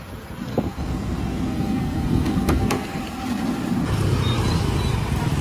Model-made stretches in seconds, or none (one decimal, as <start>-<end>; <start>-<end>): 0.5-3.0